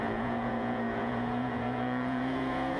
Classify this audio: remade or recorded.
remade